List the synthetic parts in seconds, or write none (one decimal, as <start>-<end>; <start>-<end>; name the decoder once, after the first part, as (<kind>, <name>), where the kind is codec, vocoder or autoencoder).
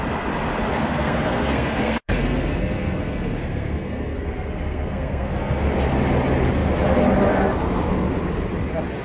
0.7-5.6 (codec, SNAC)